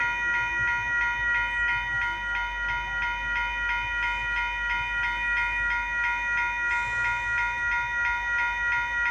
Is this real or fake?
real